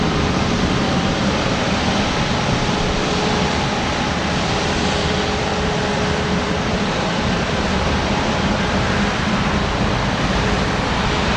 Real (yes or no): no